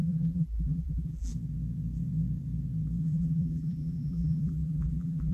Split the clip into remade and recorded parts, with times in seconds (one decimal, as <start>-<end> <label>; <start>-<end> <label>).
0.0-1.3 remade; 1.3-3.0 recorded; 3.0-5.3 remade